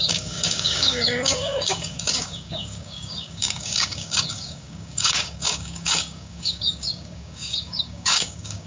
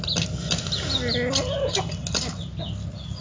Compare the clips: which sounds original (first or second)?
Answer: second